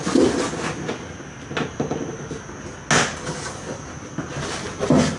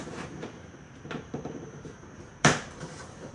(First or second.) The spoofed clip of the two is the second